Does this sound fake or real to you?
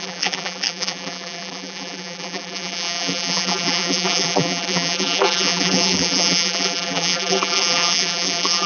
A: fake